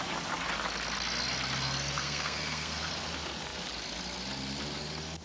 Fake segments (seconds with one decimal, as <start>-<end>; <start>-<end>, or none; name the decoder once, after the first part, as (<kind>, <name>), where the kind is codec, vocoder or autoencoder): 2.0-2.9 (codec, SNAC)

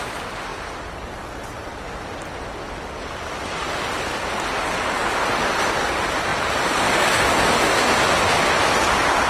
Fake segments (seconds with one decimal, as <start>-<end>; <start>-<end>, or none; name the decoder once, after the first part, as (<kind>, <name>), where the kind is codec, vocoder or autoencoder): none